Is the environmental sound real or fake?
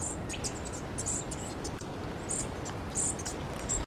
real